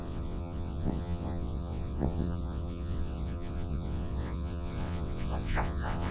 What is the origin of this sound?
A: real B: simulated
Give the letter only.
B